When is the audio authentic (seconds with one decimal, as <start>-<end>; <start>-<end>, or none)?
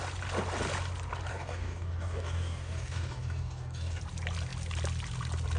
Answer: 0.0-1.3; 4.0-5.6